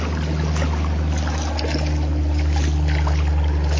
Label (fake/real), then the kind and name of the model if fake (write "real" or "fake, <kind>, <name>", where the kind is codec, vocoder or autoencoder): real